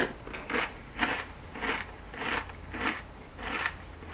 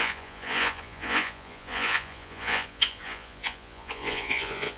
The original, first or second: first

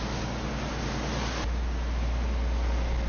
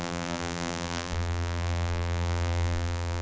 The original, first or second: first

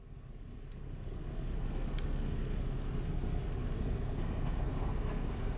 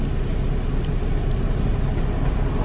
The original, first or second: second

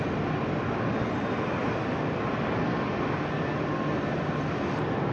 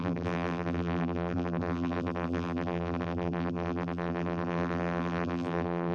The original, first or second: first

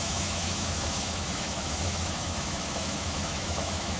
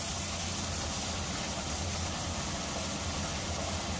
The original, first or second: second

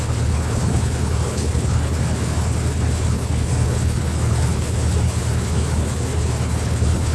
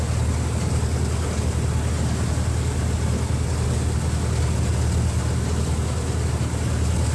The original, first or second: second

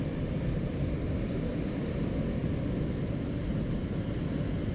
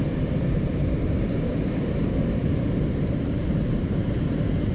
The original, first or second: first